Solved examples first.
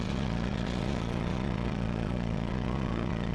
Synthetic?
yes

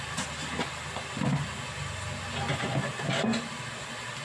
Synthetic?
no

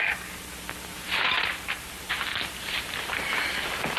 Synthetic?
no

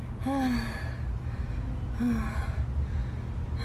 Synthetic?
no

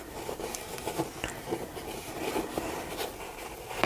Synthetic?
no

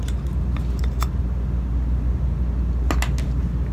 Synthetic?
no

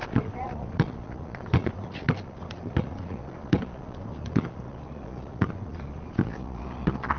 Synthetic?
yes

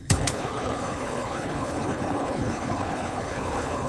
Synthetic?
yes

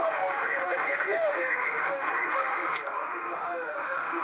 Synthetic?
yes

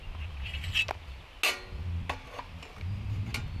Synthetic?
no